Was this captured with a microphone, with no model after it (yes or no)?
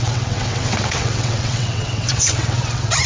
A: no